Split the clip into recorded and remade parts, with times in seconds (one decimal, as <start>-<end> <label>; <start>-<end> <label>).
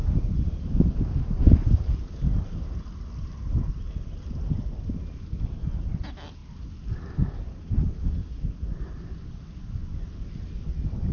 0.0-11.1 recorded